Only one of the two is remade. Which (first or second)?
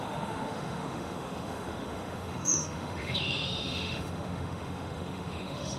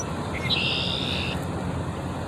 first